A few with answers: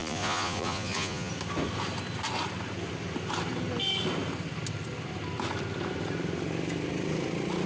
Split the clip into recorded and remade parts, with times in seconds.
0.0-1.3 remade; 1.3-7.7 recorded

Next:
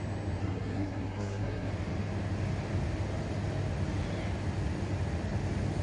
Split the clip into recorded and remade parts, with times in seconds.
0.0-0.4 recorded; 0.4-1.7 remade; 1.7-5.8 recorded

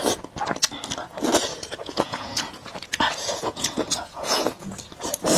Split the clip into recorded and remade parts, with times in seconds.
0.0-1.5 recorded; 1.5-4.7 remade; 4.7-5.4 recorded

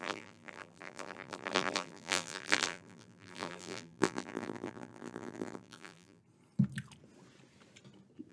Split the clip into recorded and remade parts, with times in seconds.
0.0-6.2 remade; 6.2-8.3 recorded

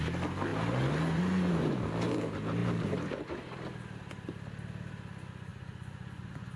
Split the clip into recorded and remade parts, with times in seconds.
0.0-5.5 recorded; 5.5-6.6 remade

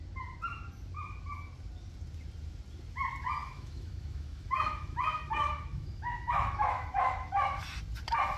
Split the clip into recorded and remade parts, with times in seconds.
0.0-3.4 recorded; 3.4-7.6 remade; 7.6-8.4 recorded